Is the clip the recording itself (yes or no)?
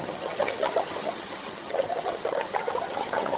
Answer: no